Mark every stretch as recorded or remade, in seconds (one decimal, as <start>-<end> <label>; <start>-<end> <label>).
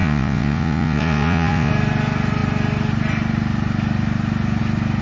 0.0-1.7 remade; 1.7-5.0 recorded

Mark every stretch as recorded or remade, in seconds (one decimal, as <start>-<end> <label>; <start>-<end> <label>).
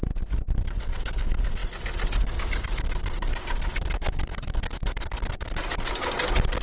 0.0-6.6 recorded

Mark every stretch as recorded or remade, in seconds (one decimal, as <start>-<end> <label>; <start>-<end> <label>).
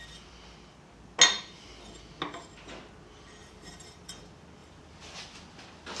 0.0-3.4 recorded; 3.4-4.1 remade; 4.1-6.0 recorded